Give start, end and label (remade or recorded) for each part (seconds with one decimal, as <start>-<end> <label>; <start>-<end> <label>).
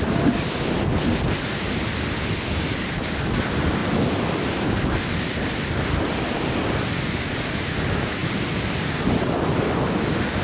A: 0.0-8.2 recorded; 8.2-9.2 remade; 9.2-10.4 recorded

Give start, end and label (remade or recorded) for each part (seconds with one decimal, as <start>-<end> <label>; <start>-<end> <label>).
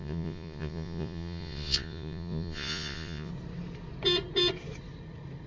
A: 0.0-3.3 remade; 3.3-5.5 recorded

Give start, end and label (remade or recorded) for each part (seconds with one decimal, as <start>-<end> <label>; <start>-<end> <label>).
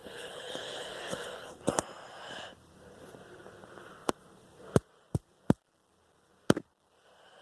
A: 0.0-1.5 remade; 1.5-7.4 recorded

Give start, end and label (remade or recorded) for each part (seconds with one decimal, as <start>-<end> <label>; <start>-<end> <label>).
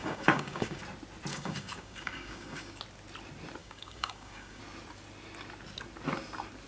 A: 0.0-0.8 remade; 0.8-1.3 recorded; 1.3-2.8 remade; 2.8-3.6 recorded; 3.6-4.6 remade; 4.6-6.7 recorded